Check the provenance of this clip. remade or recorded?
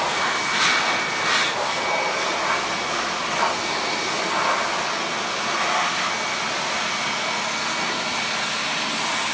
recorded